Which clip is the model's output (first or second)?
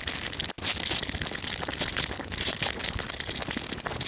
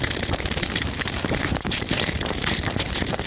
second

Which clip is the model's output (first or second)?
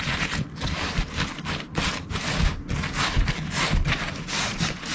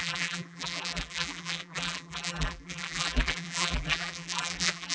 second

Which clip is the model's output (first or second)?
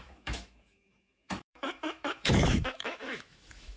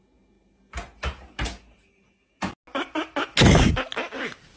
first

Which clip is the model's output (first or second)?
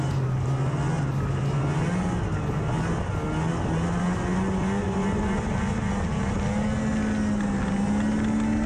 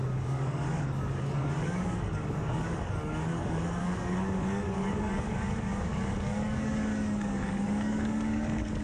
second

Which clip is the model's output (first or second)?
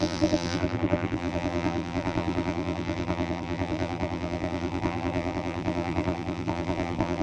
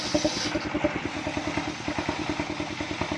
first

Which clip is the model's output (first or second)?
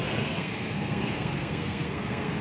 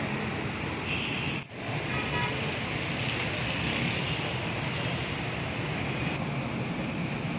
first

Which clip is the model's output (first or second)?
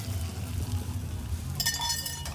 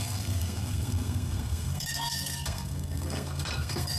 second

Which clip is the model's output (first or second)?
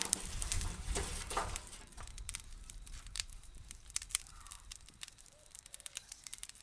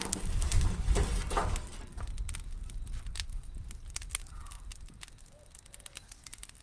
first